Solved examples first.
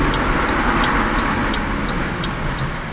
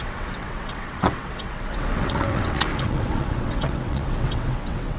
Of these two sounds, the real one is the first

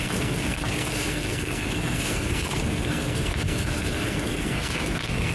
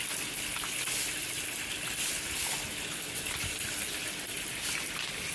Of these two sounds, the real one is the second